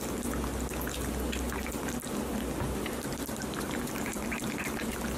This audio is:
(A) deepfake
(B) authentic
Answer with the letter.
B